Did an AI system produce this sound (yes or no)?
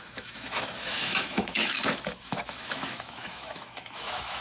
yes